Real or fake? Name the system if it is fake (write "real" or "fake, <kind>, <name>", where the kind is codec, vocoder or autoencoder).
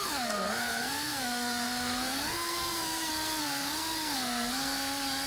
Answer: fake, codec, SNAC